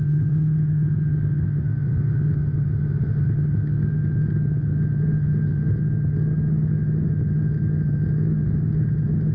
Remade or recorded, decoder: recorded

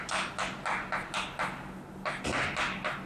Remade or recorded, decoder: recorded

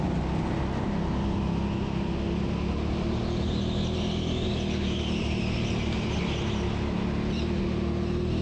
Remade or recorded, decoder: recorded